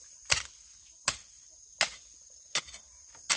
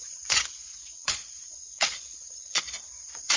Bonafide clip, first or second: first